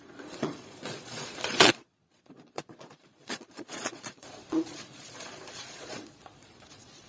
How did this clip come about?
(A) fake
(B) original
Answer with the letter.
A